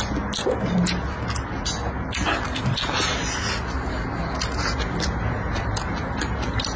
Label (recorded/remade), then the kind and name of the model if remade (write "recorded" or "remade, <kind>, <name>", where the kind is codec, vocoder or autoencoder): recorded